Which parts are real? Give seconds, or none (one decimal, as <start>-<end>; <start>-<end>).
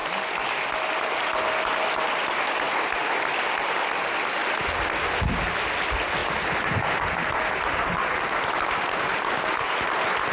0.0-10.3